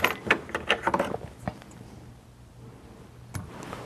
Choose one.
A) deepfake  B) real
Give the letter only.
B